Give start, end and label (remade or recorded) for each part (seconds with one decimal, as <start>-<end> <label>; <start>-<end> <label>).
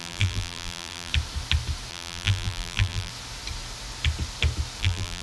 0.0-1.1 remade; 1.1-1.9 recorded; 1.9-3.1 remade; 3.1-4.8 recorded; 4.8-5.2 remade